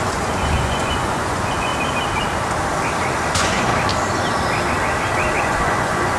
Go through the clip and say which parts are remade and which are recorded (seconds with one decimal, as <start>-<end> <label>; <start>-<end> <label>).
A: 0.0-1.7 remade; 1.7-3.3 recorded; 3.3-3.7 remade; 3.7-5.4 recorded; 5.4-6.2 remade